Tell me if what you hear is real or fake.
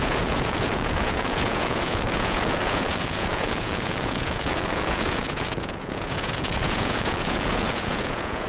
fake